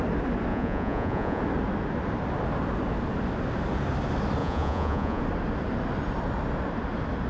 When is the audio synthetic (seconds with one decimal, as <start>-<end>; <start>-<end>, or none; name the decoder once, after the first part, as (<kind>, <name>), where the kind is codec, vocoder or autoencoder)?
0.5-1.4 (vocoder, Vocos); 4.4-5.2